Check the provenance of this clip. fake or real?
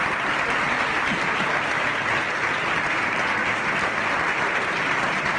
real